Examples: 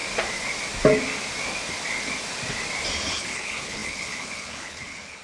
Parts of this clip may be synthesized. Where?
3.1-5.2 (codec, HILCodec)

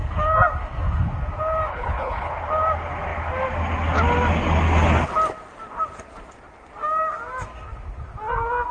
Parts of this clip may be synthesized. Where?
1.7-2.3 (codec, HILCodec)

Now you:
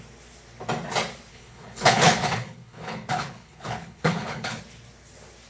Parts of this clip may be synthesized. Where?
1.3-4.6 (codec, HILCodec)